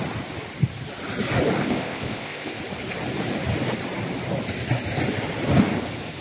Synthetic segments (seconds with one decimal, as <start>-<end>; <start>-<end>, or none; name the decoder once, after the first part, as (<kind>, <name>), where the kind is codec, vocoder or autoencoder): 1.6-2.6 (codec, ZipCodec)